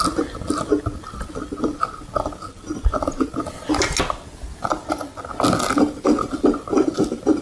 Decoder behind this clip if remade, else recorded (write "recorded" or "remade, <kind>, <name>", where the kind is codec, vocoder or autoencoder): recorded